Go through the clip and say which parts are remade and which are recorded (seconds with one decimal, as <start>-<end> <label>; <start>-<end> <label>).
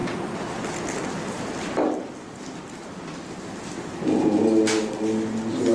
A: 0.0-5.7 recorded